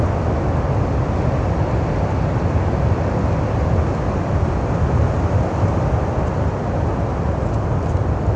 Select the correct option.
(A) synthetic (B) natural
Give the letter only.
B